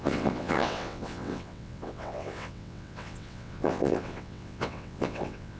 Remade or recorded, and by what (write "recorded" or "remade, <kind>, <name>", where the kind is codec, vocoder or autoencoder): remade, vocoder, WaveNeXt